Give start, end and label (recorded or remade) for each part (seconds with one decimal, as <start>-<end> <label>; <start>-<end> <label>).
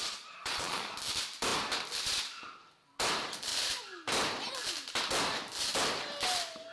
0.0-0.9 remade; 0.9-6.7 recorded